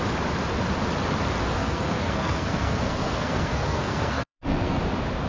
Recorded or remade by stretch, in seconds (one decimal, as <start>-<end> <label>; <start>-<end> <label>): 0.0-1.6 recorded; 1.6-4.8 remade; 4.8-5.3 recorded